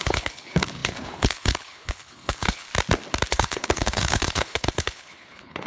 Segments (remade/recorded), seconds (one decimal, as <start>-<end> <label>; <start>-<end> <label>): 0.0-2.7 remade; 2.7-3.3 recorded; 3.3-5.7 remade